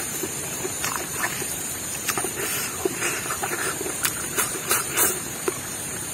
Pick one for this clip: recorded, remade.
remade